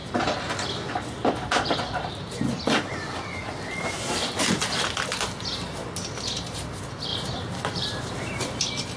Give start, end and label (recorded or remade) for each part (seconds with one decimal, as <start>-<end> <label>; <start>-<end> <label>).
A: 0.0-7.1 recorded; 7.1-8.6 remade; 8.6-9.0 recorded